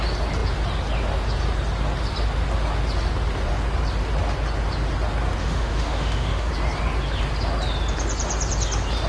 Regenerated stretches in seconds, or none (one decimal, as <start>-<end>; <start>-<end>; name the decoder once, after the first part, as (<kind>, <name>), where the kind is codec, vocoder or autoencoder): 5.4-6.5 (autoencoder, DAC-VAE)